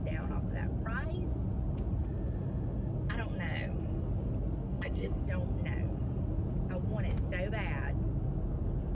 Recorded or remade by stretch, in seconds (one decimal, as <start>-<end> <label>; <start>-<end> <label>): 0.0-4.6 recorded; 4.6-5.2 remade; 5.2-8.9 recorded